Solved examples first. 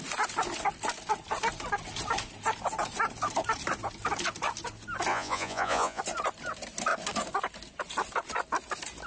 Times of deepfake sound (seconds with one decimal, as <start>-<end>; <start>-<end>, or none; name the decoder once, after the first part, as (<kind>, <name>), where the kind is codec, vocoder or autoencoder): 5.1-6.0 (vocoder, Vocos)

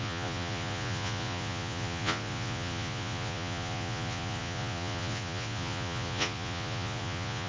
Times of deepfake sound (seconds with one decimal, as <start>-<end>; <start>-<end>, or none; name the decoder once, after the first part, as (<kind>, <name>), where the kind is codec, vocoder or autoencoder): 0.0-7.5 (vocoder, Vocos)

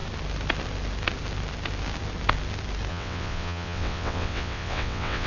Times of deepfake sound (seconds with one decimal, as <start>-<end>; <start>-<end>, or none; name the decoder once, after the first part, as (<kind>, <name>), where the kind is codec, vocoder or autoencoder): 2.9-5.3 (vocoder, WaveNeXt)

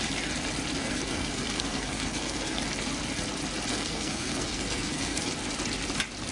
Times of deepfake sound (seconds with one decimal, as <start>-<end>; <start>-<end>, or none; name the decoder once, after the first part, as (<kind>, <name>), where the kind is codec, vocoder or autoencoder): 0.8-2.6 (codec, SNAC); 3.7-5.3